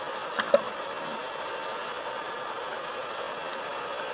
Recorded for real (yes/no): yes